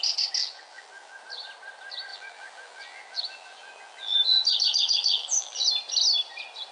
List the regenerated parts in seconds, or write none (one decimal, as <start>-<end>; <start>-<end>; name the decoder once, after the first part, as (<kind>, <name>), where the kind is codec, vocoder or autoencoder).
0.4-1.2 (vocoder, BigVGAN v2); 2.1-5.7